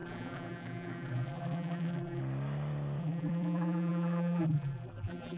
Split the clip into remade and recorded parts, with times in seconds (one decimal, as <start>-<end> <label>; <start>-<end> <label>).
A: 0.0-2.2 remade; 2.2-3.0 recorded; 3.0-5.4 remade